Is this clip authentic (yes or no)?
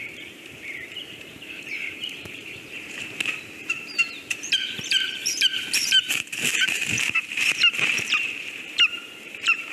no